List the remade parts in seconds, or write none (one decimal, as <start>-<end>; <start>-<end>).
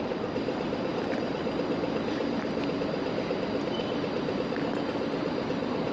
none